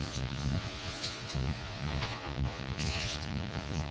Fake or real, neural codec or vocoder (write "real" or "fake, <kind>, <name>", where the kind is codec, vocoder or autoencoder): fake, vocoder, Vocos